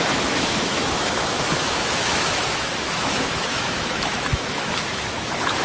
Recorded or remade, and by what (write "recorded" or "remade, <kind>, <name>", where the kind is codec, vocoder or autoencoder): remade, autoencoder, DAC-VAE